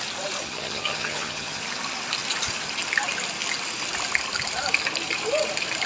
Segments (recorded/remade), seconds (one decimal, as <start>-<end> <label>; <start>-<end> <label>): 0.0-0.4 recorded; 0.4-1.6 remade; 1.6-5.9 recorded